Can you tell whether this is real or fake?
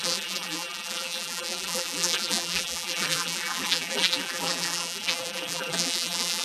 fake